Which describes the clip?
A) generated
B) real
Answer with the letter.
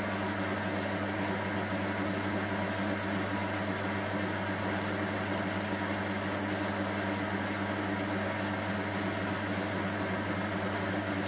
B